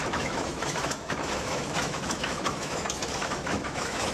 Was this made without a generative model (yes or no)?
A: no